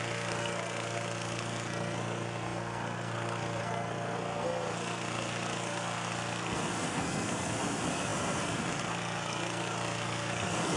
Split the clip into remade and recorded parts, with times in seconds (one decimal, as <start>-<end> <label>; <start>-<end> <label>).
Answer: 0.0-10.8 remade